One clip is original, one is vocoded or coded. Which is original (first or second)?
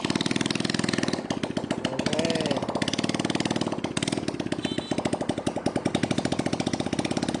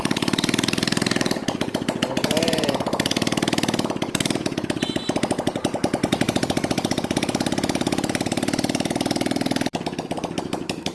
first